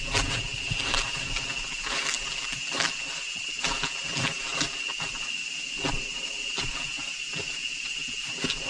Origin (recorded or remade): recorded